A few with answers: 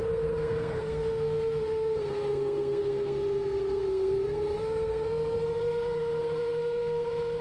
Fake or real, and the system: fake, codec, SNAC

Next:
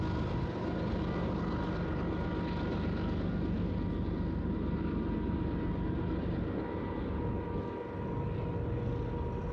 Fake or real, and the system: real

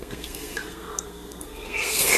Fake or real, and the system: fake, codec, SNAC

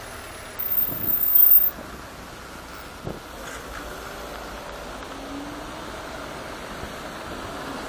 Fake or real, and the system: real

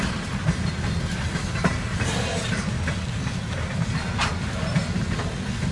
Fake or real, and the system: real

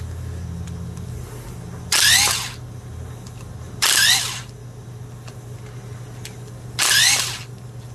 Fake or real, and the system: real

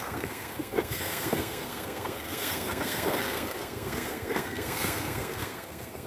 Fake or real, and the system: fake, codec, SNAC